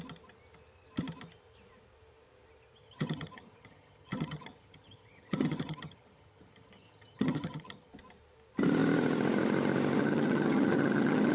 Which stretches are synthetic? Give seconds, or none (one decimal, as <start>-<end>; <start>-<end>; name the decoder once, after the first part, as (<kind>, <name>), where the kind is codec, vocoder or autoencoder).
2.8-7.9 (vocoder, HiFi-GAN); 10.0-11.3